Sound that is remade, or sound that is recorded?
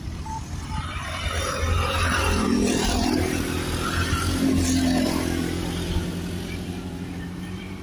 remade